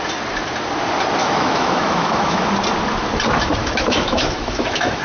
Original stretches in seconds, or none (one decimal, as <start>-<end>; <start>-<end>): 0.0-1.2; 2.5-3.6